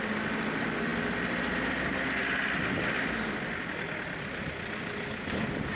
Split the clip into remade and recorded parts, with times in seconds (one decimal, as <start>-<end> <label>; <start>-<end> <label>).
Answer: 0.0-5.8 recorded